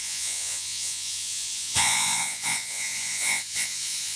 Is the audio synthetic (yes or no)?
yes